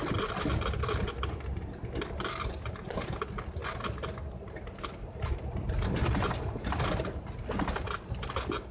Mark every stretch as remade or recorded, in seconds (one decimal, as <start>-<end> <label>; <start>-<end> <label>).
0.0-8.7 recorded